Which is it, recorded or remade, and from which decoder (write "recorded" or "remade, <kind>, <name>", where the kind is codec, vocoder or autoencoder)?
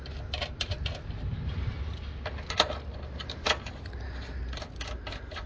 recorded